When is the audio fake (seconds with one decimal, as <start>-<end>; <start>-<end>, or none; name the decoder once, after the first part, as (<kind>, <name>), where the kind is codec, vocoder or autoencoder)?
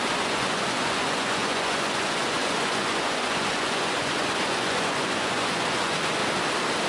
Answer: 0.0-6.2 (vocoder, Vocos)